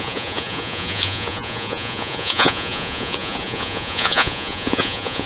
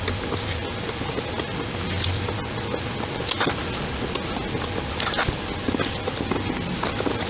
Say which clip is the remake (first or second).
first